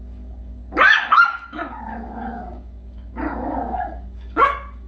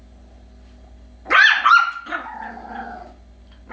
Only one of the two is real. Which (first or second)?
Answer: second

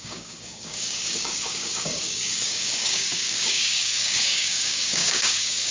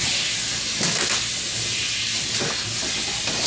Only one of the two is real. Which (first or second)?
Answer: second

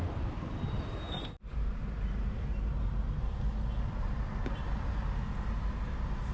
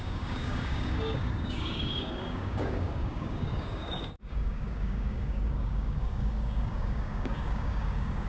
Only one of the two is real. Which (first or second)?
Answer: first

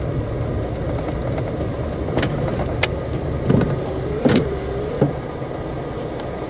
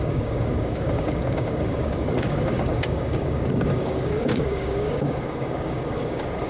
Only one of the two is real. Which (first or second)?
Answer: first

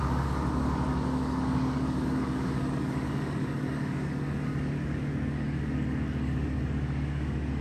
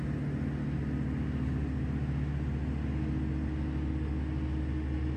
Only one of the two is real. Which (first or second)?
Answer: second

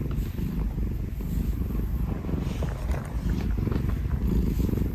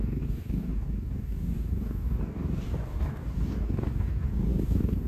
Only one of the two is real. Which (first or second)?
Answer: first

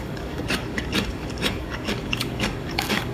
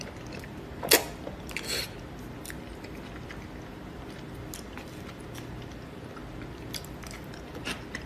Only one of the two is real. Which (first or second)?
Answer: second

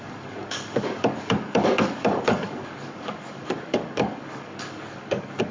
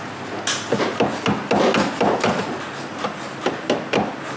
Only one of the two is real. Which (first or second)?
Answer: second